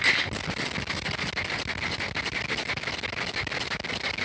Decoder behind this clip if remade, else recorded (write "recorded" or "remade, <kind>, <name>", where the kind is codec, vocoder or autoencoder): recorded